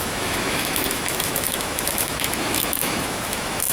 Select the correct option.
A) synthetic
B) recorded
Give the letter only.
A